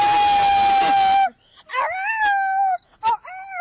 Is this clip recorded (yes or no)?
yes